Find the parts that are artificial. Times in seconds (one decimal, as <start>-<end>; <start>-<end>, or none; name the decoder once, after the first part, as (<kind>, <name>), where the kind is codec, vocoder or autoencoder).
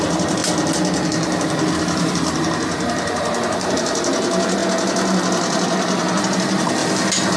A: 0.0-0.4 (vocoder, BigVGAN v2); 1.7-4.6; 6.2-6.8